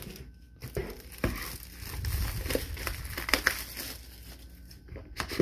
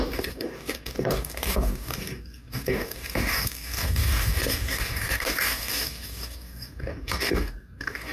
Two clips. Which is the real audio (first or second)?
first